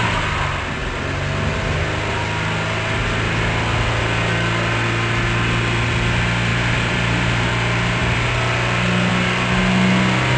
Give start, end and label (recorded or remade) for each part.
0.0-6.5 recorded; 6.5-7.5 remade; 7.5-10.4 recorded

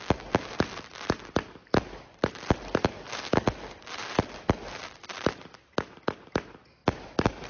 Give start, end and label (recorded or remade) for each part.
0.0-6.8 recorded; 6.8-7.5 remade

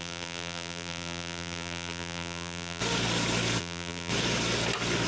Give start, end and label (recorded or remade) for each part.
0.0-2.8 remade; 2.8-3.6 recorded; 3.6-4.1 remade; 4.1-5.1 recorded

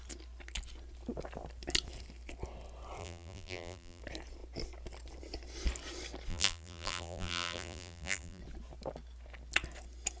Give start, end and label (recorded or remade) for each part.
0.0-3.0 recorded; 3.0-4.0 remade; 4.0-6.3 recorded; 6.3-8.4 remade; 8.4-10.2 recorded